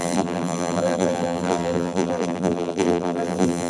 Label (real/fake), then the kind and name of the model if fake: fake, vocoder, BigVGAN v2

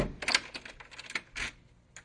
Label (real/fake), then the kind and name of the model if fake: real